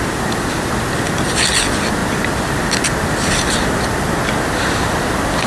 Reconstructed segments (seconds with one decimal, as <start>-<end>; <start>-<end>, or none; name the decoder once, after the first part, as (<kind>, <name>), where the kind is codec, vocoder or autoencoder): none